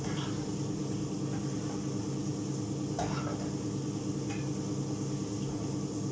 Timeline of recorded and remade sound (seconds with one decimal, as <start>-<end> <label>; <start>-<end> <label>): 0.0-6.1 recorded